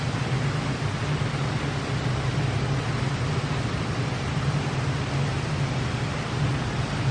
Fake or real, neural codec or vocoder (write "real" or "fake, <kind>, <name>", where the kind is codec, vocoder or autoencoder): real